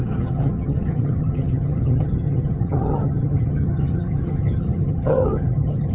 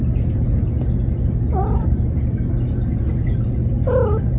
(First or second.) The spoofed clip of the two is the first